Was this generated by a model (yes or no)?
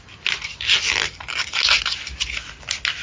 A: no